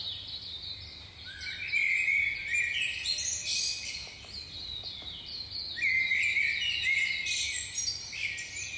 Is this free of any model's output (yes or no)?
yes